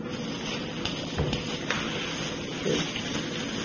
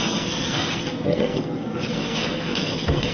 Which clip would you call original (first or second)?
first